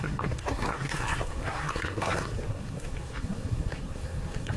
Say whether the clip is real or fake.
fake